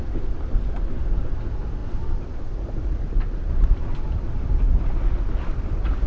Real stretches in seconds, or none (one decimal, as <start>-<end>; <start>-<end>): 0.0-6.1